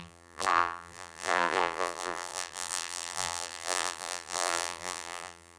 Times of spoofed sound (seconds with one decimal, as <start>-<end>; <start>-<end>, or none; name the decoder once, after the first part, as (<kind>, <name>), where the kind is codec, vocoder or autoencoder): 0.0-5.6 (vocoder, BigVGAN v2)

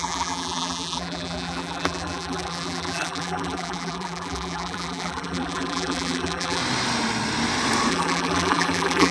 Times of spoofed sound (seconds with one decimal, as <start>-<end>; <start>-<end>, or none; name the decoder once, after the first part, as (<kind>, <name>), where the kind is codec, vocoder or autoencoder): 0.0-6.6 (vocoder, BigVGAN v2); 7.9-9.1

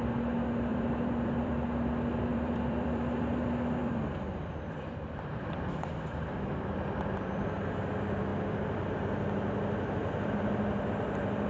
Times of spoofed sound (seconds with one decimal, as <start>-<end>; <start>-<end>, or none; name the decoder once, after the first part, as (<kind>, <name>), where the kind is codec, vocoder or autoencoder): 0.7-1.5 (vocoder, BigVGAN v2); 2.3-3.4; 3.8-7.5